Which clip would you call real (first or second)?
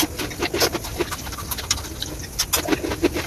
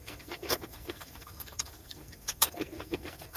first